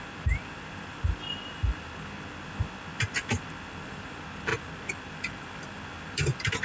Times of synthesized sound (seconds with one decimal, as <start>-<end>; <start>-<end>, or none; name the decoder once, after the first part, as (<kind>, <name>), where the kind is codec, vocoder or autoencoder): none